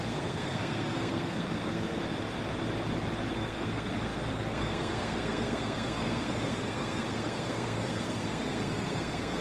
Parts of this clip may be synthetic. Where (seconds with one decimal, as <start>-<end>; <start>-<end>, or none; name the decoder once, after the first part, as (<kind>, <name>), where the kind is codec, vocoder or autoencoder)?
0.0-2.0 (codec, SNAC); 3.3-9.4